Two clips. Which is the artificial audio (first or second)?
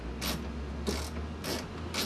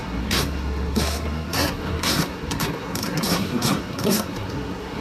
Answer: second